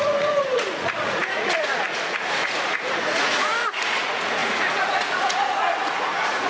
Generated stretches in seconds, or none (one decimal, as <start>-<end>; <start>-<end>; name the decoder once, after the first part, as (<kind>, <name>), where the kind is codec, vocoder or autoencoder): 0.0-6.5 (vocoder, Vocos)